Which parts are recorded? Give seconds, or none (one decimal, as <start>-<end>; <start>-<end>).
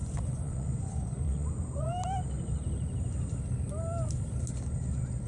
1.9-5.3